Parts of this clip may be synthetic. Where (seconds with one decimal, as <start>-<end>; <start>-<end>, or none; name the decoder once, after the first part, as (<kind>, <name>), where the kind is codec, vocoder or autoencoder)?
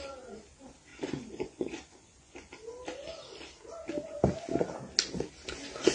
0.9-2.5 (vocoder, Vocos)